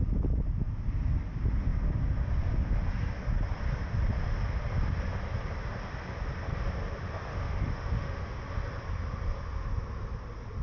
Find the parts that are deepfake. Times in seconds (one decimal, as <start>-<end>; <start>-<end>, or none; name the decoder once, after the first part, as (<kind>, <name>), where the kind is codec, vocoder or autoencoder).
7.3-8.4 (autoencoder, DAC-VAE)